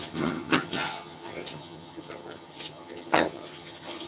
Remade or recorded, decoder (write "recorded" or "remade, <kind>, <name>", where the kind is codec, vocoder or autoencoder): remade, vocoder, HiFi-GAN